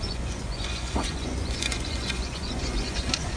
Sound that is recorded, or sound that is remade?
remade